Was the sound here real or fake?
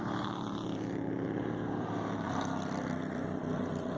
fake